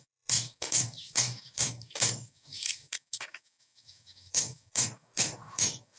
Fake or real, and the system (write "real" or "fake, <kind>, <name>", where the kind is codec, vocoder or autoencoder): fake, codec, DAC